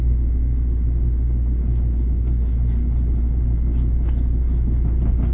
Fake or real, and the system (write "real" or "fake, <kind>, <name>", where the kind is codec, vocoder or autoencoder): real